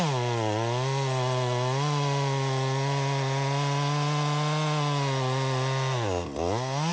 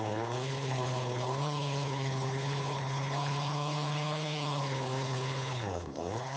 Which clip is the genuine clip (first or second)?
first